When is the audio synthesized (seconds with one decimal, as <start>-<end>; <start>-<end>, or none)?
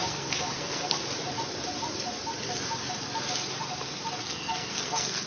0.0-1.0; 4.2-5.3